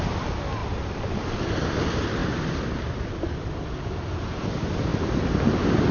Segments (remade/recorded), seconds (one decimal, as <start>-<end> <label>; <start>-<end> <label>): 0.0-5.9 recorded